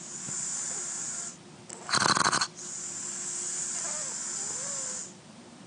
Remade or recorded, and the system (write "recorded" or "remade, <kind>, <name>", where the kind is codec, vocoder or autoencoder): recorded